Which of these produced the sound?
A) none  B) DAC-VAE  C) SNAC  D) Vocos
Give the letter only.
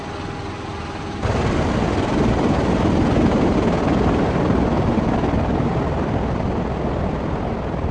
A